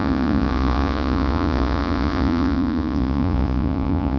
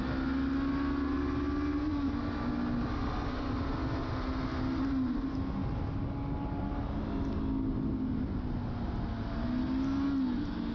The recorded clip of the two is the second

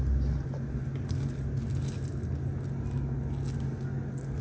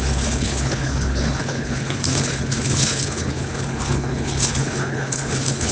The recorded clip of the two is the first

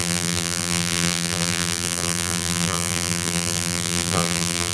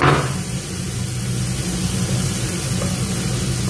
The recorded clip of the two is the second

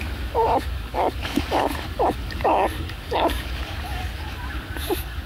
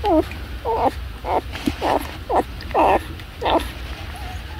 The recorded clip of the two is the second